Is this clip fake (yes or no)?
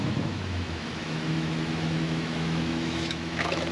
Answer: yes